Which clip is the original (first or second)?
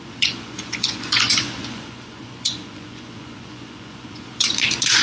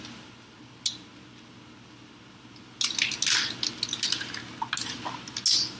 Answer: second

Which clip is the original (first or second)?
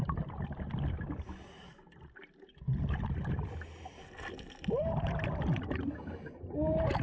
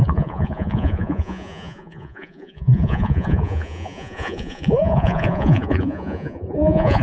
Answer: first